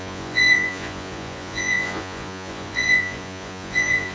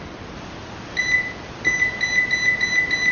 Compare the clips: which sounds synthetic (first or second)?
first